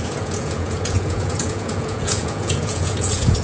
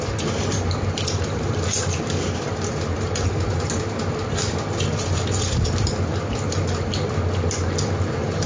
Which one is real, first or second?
second